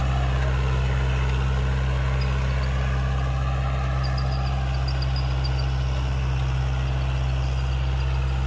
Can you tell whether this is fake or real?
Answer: real